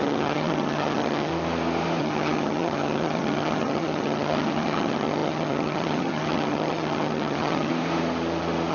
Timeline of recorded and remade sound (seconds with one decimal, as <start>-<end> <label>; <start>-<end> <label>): 0.0-1.3 remade; 1.3-2.0 recorded; 2.0-7.7 remade; 7.7-8.7 recorded

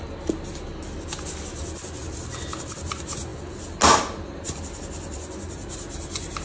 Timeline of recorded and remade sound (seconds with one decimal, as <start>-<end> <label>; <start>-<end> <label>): 0.0-6.4 recorded

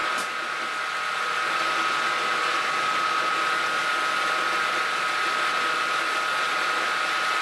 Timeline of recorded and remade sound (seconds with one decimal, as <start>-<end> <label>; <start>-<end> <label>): 0.0-7.4 recorded

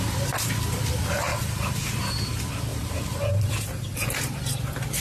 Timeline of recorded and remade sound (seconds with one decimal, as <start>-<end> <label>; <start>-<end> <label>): 0.0-1.3 recorded; 1.3-1.9 remade; 1.9-2.7 recorded; 2.7-3.5 remade; 3.5-5.0 recorded